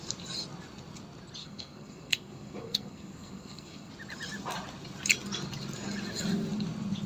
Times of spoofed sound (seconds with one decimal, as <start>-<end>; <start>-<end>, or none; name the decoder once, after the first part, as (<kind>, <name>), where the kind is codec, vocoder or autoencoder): 1.4-3.9 (codec, SNAC)